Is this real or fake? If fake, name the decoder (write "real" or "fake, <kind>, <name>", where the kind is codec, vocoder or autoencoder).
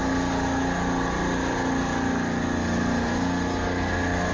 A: real